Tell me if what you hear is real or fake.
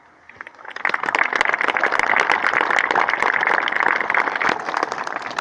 real